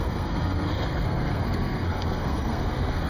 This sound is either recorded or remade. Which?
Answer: remade